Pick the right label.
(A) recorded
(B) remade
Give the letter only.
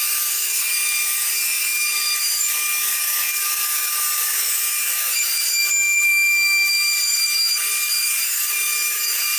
B